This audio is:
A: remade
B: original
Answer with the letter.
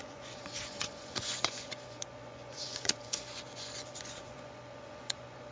A